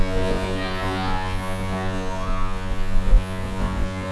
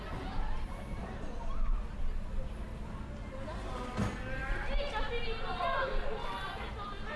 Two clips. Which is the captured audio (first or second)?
second